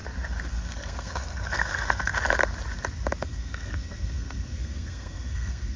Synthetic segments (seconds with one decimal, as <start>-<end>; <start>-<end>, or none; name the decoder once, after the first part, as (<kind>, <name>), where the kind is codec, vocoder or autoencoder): 0.5-2.1 (codec, SNAC); 3.2-5.8